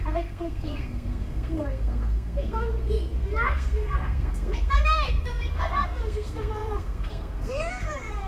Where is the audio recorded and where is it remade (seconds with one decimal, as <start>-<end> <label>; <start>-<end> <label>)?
0.0-8.3 remade